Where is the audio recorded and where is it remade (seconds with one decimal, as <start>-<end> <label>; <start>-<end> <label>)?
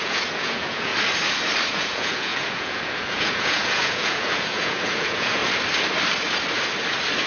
0.0-0.9 remade; 0.9-1.7 recorded; 1.7-5.4 remade; 5.4-7.3 recorded